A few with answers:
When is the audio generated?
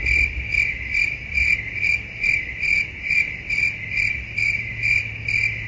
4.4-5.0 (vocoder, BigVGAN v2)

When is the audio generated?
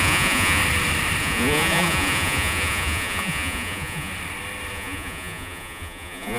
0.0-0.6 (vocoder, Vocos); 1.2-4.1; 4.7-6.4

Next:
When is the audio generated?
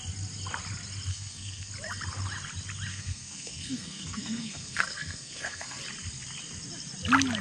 1.1-1.7 (codec, SNAC); 2.9-5.8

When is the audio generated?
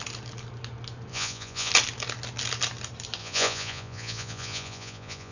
1.1-1.7 (vocoder, Vocos); 3.2-5.3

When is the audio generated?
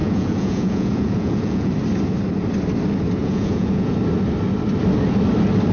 0.0-1.7 (vocoder, Vocos); 3.2-3.9